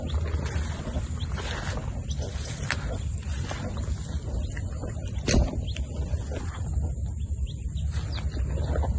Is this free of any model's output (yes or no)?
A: yes